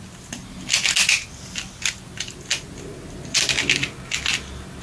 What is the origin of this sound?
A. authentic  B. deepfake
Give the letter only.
A